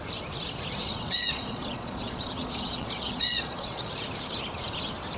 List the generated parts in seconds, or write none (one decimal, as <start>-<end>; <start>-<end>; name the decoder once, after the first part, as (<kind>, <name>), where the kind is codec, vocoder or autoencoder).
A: 0.8-3.9 (vocoder, Vocos)